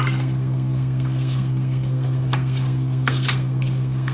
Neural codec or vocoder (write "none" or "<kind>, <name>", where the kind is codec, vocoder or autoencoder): codec, SNAC